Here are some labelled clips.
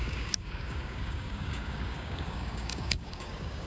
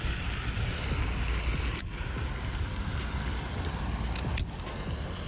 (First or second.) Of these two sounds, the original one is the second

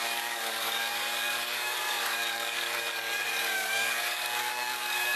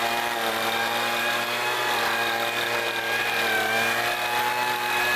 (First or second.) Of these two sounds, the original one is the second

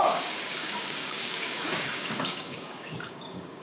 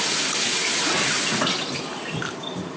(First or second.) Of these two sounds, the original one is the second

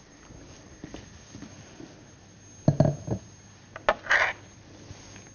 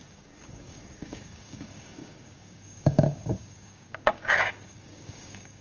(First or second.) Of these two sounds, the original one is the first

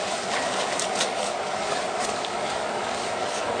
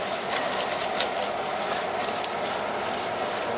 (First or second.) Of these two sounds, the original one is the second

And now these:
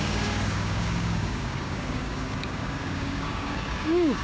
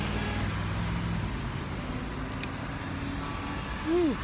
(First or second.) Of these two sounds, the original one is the second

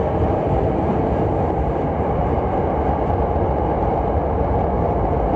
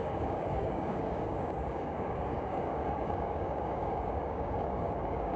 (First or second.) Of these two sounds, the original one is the first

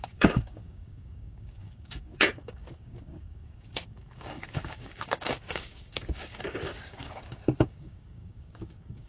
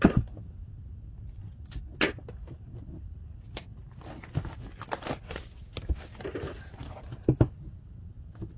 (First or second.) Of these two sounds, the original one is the second